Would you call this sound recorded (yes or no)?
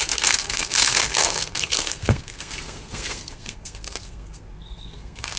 no